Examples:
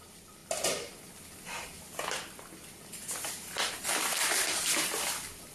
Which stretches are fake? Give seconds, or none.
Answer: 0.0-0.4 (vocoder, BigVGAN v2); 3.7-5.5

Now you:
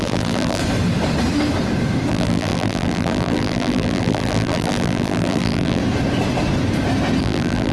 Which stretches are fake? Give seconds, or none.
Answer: 0.0-0.6 (vocoder, BigVGAN v2); 2.1-5.8; 7.2-7.7